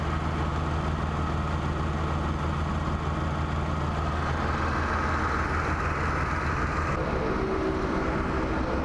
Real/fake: real